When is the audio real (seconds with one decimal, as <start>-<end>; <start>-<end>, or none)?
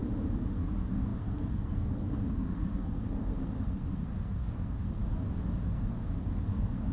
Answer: 0.0-0.5; 5.0-5.6